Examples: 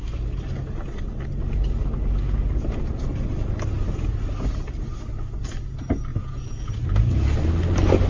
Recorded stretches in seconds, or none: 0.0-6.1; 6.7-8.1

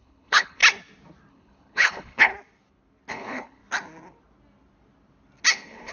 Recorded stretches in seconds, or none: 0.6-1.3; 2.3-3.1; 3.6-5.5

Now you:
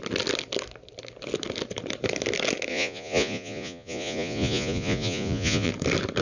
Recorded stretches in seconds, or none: 0.0-2.7; 5.7-6.2

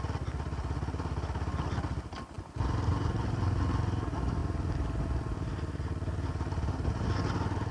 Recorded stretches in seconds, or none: 0.0-7.7

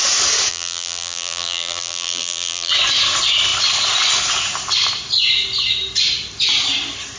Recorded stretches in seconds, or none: 0.0-0.5; 2.7-7.2

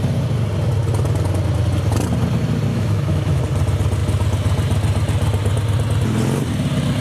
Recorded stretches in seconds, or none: 0.0-2.7; 3.4-7.0

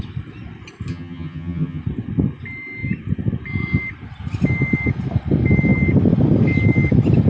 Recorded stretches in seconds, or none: 0.0-0.9; 1.8-7.3

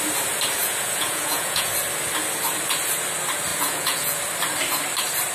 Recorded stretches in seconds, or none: 0.0-0.6; 1.7-3.5; 4.2-5.3